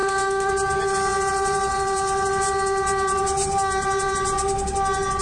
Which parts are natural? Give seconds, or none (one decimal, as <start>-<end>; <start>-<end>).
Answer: 0.5-5.2

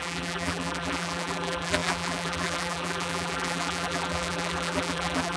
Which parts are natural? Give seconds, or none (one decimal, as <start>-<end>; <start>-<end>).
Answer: none

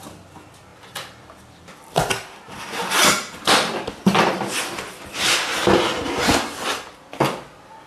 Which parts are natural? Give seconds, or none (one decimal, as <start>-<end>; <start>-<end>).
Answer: 0.0-0.7; 5.2-7.9

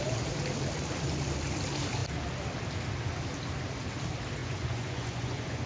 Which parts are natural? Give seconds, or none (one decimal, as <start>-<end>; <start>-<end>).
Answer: 0.0-4.4